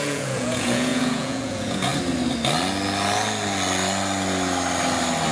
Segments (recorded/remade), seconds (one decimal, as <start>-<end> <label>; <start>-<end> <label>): 0.0-1.9 remade; 1.9-5.3 recorded